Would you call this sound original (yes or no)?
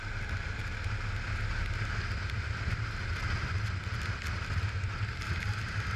yes